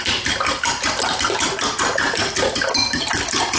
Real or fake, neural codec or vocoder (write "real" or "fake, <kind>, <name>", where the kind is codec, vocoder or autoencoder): real